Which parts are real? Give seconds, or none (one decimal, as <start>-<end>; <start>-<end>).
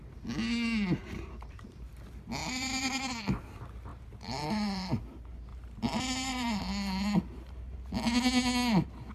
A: 0.0-1.0; 1.9-2.4; 3.1-3.9; 5.0-5.5; 6.6-9.1